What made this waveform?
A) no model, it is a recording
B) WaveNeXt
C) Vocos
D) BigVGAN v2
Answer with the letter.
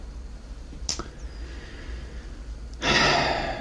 A